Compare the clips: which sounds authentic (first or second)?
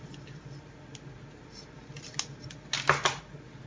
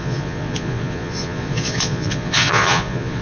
first